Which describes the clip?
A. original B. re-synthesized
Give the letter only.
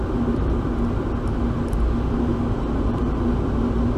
A